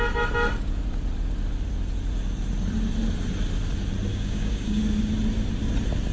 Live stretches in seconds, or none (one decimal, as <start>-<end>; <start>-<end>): 0.0-4.1; 4.8-6.1